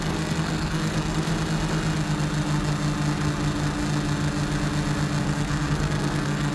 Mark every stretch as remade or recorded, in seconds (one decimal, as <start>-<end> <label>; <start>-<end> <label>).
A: 0.0-1.3 remade; 1.3-5.2 recorded; 5.2-6.5 remade